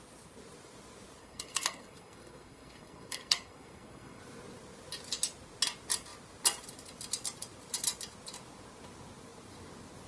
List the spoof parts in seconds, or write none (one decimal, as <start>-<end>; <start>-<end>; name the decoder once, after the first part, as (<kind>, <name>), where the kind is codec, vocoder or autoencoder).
1.2-4.2 (codec, SNAC)